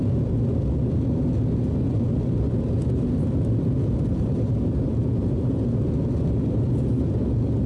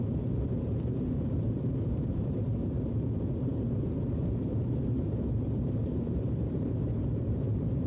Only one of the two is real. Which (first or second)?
first